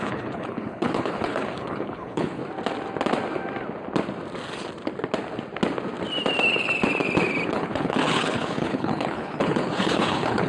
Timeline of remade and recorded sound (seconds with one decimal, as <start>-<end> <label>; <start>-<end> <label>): 0.0-2.4 remade; 2.4-7.5 recorded; 7.5-10.5 remade